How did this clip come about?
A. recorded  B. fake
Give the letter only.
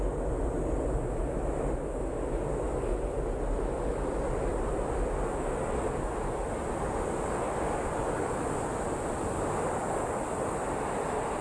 A